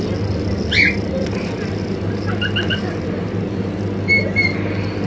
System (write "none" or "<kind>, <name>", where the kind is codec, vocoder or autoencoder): none